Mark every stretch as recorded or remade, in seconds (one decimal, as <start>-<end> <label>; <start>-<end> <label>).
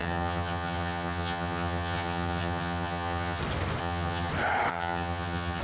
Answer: 0.0-3.4 remade; 3.4-3.8 recorded; 3.8-4.3 remade; 4.3-4.7 recorded; 4.7-5.6 remade